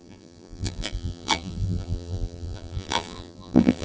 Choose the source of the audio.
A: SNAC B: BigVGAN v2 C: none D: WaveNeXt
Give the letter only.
B